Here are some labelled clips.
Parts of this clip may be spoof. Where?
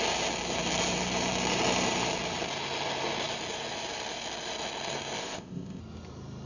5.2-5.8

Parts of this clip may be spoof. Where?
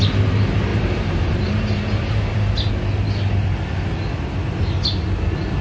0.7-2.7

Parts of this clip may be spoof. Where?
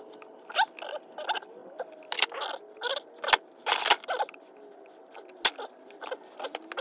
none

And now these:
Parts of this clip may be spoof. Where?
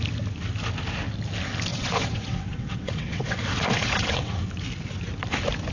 1.7-4.3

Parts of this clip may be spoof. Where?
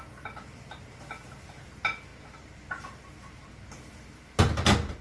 none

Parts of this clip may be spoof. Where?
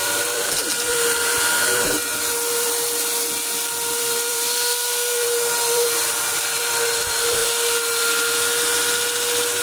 0.0-7.4; 8.0-8.7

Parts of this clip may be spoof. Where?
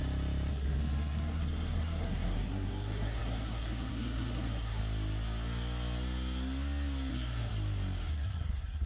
0.5-4.8; 7.1-7.5; 8.1-8.9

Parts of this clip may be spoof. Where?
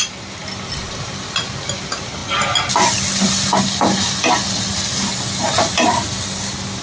none